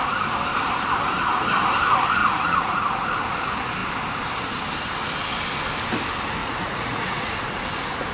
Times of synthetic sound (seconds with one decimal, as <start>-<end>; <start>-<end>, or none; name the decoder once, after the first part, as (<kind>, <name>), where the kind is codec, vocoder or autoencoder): 2.2-2.8 (vocoder, Vocos); 6.4-7.3